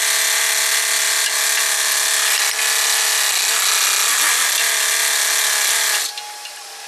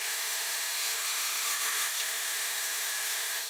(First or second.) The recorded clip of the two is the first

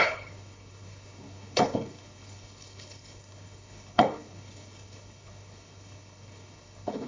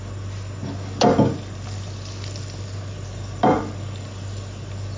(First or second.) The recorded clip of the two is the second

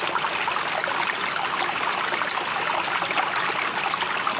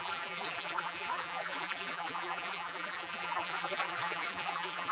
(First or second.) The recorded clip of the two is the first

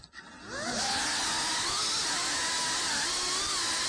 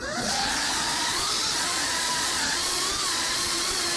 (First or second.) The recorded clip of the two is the first